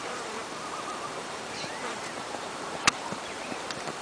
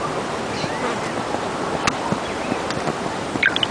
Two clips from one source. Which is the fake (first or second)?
first